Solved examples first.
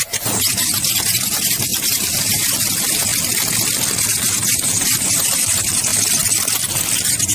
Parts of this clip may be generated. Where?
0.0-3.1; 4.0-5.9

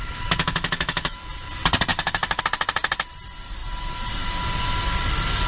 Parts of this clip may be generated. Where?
0.0-1.2; 1.9-2.4

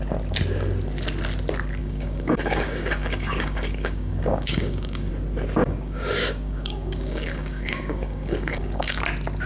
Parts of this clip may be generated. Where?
1.8-5.1; 5.6-9.0

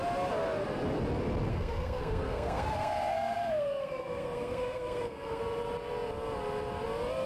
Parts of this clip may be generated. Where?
1.5-5.4

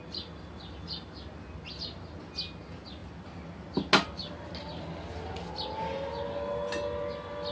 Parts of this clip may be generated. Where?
none

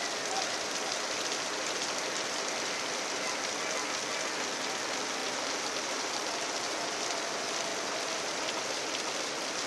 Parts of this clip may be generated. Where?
5.2-7.0

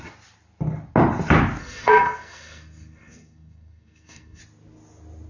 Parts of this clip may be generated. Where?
1.6-4.4

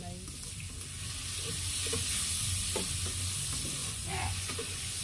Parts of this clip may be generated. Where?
3.8-5.0